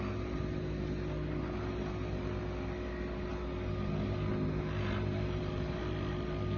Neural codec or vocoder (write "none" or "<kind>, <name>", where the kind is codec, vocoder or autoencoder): none